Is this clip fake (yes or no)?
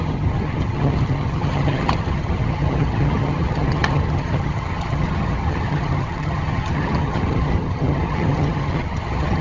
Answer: yes